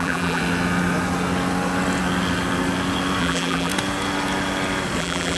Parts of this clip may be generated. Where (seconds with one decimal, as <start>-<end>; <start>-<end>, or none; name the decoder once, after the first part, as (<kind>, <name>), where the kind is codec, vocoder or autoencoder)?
0.0-0.4 (vocoder, BigVGAN v2); 3.2-3.7; 5.0-5.4